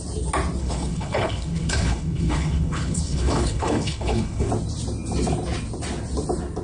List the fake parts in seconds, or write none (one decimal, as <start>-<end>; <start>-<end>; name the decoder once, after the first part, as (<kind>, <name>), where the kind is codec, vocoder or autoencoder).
0.6-4.5 (codec, HILCodec)